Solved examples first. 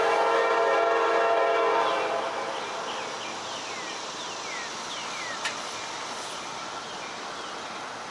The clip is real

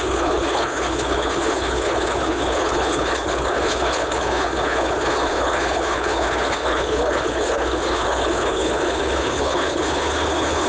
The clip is fake